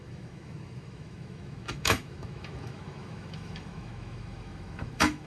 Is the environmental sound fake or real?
fake